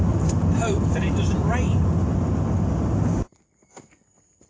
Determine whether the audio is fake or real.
real